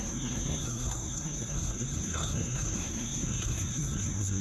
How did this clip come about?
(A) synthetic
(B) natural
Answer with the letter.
A